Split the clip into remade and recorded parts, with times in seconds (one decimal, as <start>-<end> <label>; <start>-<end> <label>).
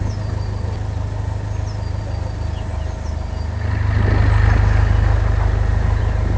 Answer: 0.0-6.4 recorded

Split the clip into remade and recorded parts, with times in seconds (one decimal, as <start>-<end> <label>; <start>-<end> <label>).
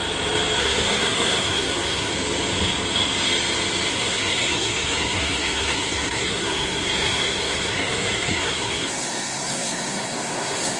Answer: 0.0-0.6 recorded; 0.6-2.1 remade; 2.1-3.9 recorded; 3.9-10.8 remade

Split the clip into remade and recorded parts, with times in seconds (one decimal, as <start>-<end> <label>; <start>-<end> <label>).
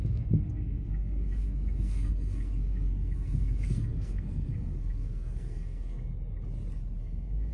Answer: 0.0-6.1 remade; 6.1-7.0 recorded; 7.0-7.5 remade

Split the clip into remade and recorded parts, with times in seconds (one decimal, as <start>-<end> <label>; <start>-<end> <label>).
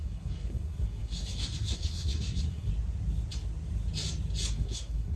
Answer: 0.0-2.7 remade; 2.7-4.5 recorded; 4.5-5.2 remade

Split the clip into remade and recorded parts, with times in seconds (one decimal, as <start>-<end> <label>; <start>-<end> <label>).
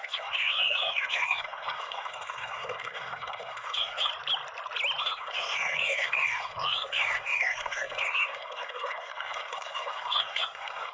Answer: 0.0-4.1 remade; 4.1-5.0 recorded; 5.0-10.9 remade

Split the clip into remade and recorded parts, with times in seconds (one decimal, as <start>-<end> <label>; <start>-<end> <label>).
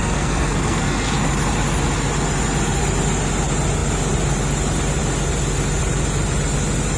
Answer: 0.0-1.1 remade; 1.1-7.0 recorded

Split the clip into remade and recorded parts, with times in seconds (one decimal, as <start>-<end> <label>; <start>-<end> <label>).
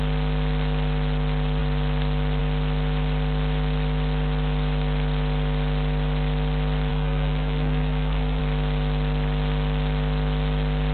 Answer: 0.0-6.9 recorded; 6.9-8.4 remade; 8.4-10.9 recorded